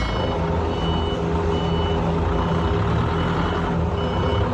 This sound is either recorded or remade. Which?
recorded